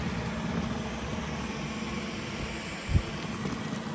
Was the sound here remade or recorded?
recorded